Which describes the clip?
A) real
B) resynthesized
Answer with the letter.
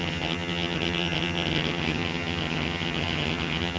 B